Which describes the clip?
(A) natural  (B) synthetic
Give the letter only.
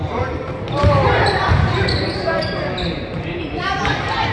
B